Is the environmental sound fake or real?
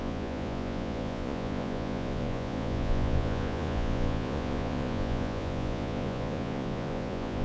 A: fake